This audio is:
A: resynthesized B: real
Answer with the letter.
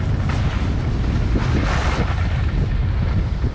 B